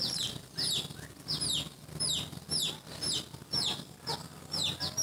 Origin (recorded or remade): recorded